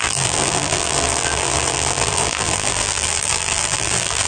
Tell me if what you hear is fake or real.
fake